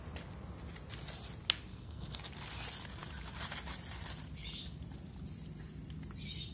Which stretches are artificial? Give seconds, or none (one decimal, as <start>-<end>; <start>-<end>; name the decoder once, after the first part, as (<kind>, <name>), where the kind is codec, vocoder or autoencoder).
1.7-2.2 (codec, SNAC)